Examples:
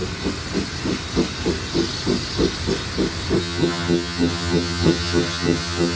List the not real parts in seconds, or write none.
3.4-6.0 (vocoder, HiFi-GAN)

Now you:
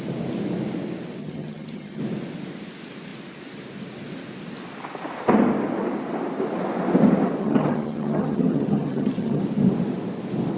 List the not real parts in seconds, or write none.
1.2-2.0 (vocoder, HiFi-GAN); 7.4-9.4

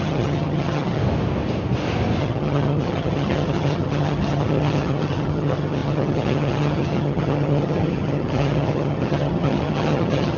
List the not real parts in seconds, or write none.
0.0-1.0 (vocoder, HiFi-GAN); 2.2-10.4

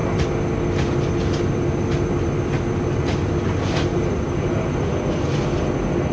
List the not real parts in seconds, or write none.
none

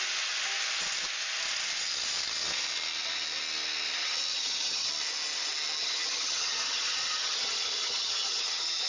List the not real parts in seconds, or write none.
4.3-4.9 (vocoder, HiFi-GAN); 5.8-8.9